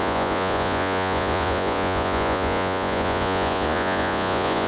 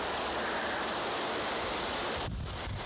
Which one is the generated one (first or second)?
first